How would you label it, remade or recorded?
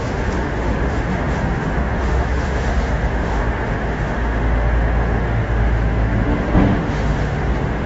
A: remade